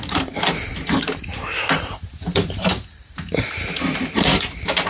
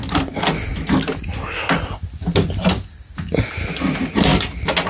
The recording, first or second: second